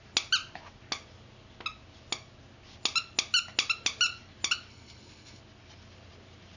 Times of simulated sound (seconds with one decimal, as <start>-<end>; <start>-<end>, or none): 4.7-5.4

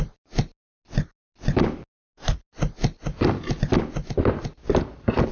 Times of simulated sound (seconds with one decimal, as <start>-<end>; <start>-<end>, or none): none

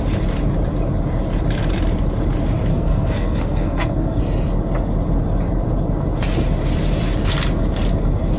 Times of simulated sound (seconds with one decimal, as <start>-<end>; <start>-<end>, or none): 2.7-4.2

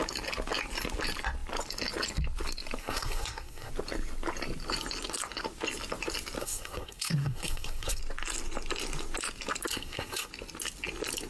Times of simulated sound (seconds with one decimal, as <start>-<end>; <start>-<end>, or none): 2.8-3.7; 6.4-8.0; 9.7-10.3

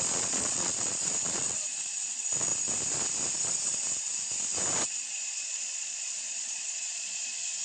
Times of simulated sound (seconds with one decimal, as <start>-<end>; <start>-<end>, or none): 0.0-2.5; 3.3-3.7; 5.1-7.6

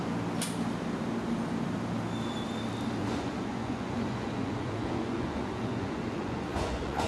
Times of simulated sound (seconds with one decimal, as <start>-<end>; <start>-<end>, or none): 3.0-7.1

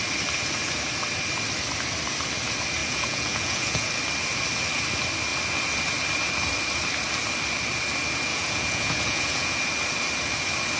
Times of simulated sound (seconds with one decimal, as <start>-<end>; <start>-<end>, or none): 2.8-3.9; 8.3-9.6